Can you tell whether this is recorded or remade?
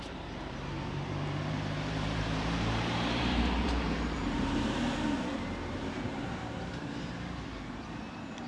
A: remade